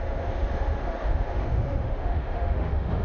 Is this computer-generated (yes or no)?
yes